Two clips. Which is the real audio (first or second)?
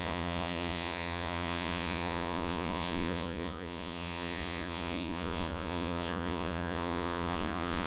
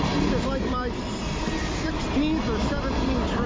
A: second